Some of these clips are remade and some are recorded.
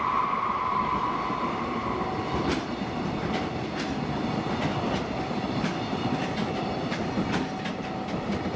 recorded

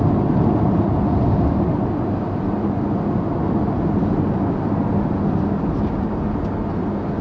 recorded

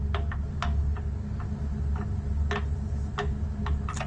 recorded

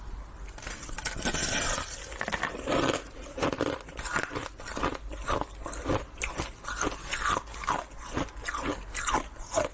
recorded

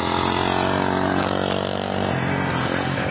recorded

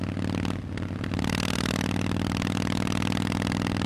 recorded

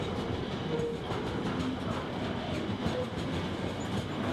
recorded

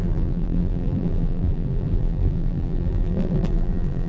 remade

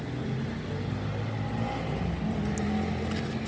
recorded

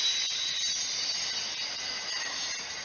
recorded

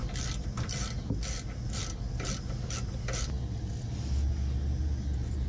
recorded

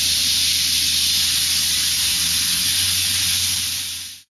recorded